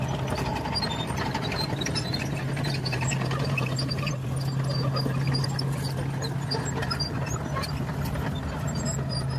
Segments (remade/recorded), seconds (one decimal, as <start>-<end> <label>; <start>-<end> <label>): 0.0-0.5 recorded; 0.5-4.1 remade; 4.1-9.4 recorded